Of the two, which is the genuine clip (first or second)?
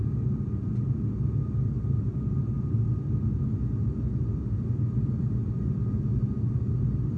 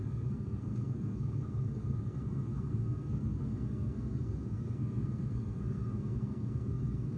first